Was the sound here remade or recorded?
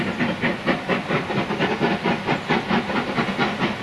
recorded